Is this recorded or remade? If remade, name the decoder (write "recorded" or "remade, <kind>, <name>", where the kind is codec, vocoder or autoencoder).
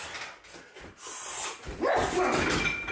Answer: recorded